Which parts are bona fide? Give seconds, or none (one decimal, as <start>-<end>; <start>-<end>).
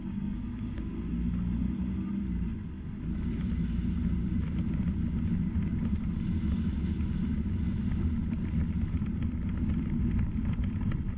0.9-11.2